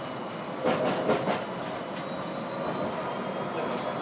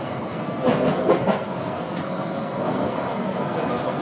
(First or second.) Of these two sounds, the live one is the first